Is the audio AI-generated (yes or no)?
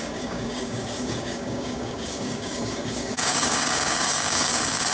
yes